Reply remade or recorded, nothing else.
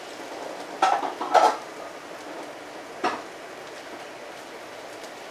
recorded